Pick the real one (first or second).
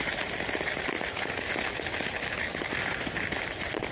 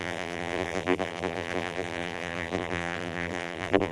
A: first